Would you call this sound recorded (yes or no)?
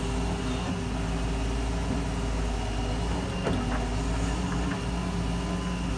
yes